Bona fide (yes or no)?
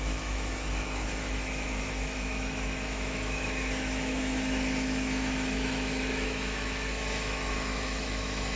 no